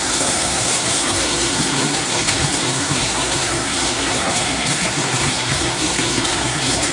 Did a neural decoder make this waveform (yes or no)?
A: yes